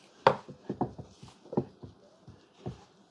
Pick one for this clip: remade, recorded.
recorded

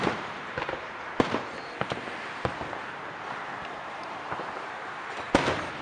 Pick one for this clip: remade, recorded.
remade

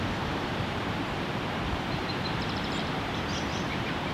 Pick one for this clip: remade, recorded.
remade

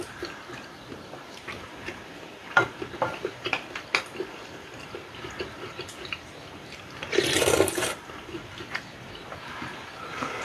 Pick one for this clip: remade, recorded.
remade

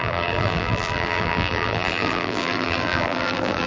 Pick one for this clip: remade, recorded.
remade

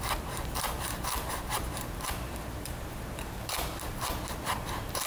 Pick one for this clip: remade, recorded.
remade